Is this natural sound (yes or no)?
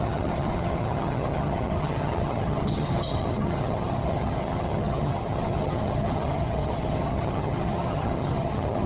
no